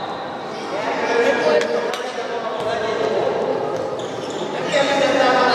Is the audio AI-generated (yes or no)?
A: no